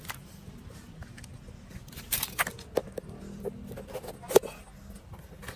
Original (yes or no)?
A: yes